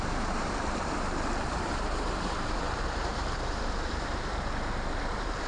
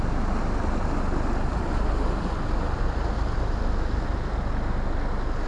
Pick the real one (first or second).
second